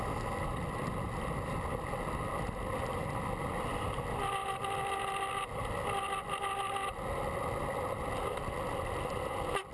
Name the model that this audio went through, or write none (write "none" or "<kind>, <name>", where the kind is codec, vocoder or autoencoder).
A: none